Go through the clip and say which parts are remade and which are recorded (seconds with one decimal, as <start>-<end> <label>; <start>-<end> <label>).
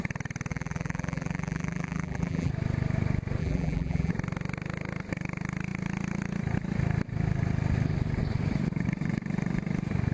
0.0-0.5 recorded; 0.5-2.5 remade; 2.5-3.4 recorded; 3.4-4.1 remade; 4.1-10.1 recorded